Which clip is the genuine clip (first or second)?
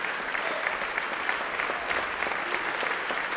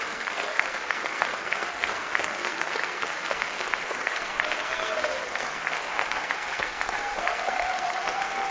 first